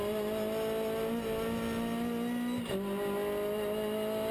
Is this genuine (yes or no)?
yes